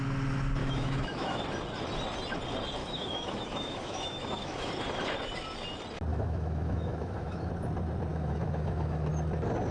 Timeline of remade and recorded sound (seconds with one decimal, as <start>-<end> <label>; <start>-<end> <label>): 0.0-0.6 recorded; 0.6-1.4 remade; 1.4-2.8 recorded; 2.8-4.7 remade; 4.7-6.1 recorded; 6.1-7.5 remade; 7.5-8.1 recorded; 8.1-9.1 remade; 9.1-9.7 recorded